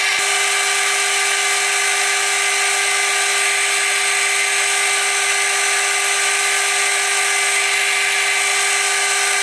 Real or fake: real